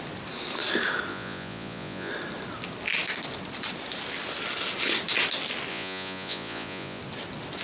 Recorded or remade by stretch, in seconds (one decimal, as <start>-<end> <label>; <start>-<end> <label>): 0.0-1.1 recorded; 1.1-2.1 remade; 2.1-5.7 recorded; 5.7-7.0 remade; 7.0-7.6 recorded